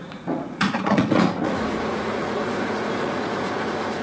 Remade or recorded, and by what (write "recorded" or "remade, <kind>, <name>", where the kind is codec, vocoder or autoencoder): remade, vocoder, Vocos